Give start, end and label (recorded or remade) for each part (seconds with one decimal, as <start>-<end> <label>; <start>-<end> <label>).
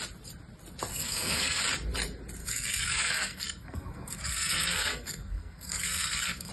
0.0-0.9 recorded; 0.9-1.6 remade; 1.6-2.4 recorded; 2.4-6.5 remade